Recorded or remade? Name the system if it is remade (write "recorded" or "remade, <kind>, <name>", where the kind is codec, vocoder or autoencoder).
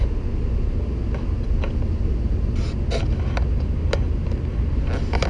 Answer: recorded